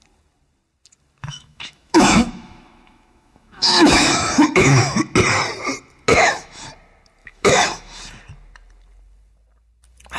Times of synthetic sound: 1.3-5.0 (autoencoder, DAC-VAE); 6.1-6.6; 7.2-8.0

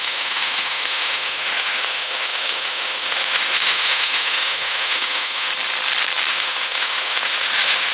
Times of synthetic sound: 0.0-5.5 (autoencoder, DAC-VAE); 6.3-7.9

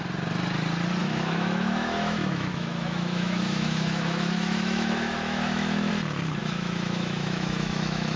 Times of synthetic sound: 1.0-5.9 (autoencoder, DAC-VAE); 6.4-8.2

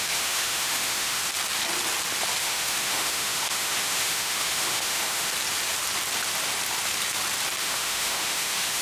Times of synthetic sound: 0.0-1.2 (autoencoder, DAC-VAE); 2.4-5.3; 7.6-8.8

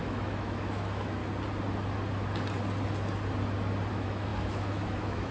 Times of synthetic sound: 0.0-1.2 (autoencoder, DAC-VAE); 3.9-5.3

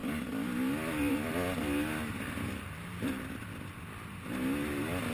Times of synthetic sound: none

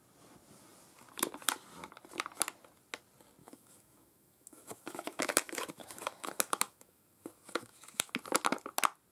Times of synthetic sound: 3.4-8.1 (autoencoder, DAC-VAE)